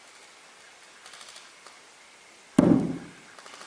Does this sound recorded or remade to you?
recorded